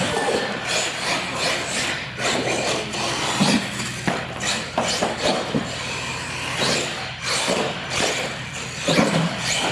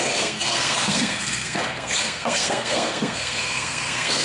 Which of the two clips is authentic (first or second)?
first